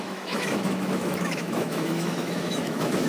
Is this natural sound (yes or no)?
no